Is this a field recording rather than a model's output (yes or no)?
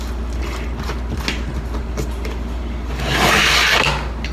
yes